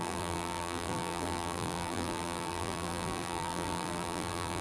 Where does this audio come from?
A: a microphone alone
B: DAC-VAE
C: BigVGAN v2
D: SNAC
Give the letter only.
C